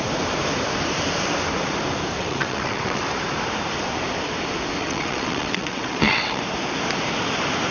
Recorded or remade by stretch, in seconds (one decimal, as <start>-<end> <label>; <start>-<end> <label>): 0.0-2.2 recorded; 2.2-3.0 remade; 3.0-4.8 recorded; 4.8-6.4 remade; 6.4-7.7 recorded